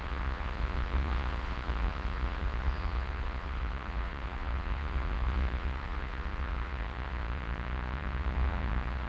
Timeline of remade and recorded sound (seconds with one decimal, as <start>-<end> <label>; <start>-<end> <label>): 0.0-9.1 remade